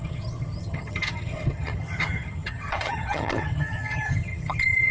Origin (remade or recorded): remade